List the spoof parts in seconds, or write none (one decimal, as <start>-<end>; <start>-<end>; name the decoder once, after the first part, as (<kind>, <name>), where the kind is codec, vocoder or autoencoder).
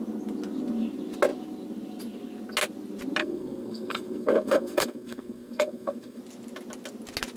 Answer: 3.2-6.2 (codec, SNAC)